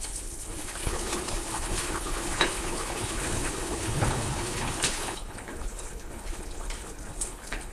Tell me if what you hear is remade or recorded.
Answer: remade